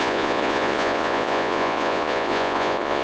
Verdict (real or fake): fake